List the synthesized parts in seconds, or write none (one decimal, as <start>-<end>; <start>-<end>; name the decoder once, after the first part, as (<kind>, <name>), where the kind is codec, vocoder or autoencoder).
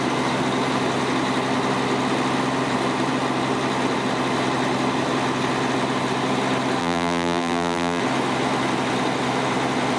6.8-8.0 (vocoder, BigVGAN v2)